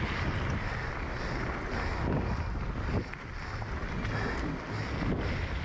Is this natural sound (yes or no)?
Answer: yes